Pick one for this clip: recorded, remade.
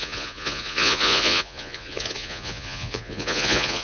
remade